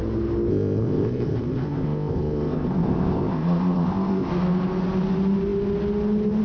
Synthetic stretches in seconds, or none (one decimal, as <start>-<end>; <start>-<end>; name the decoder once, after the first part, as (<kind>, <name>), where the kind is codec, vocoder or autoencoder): 0.5-4.3 (codec, ZipCodec)